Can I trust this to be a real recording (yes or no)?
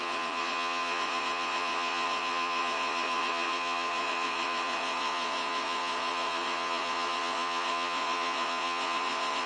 no